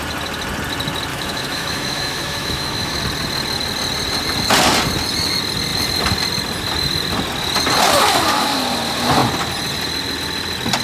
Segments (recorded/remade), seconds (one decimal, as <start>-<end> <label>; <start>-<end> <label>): 0.0-1.1 recorded; 1.1-3.0 remade; 3.0-10.8 recorded